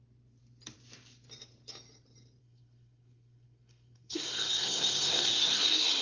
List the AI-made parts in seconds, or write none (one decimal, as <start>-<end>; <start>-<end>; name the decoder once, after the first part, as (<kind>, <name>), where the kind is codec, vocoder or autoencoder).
2.4-6.0 (codec, SNAC)